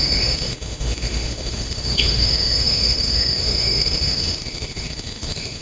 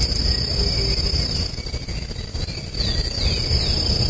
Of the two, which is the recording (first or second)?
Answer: second